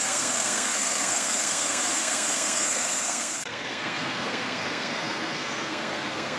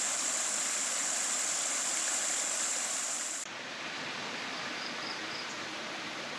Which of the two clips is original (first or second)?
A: second